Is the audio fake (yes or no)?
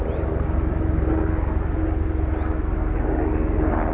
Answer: no